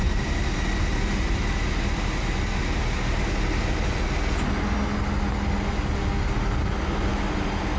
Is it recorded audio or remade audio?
recorded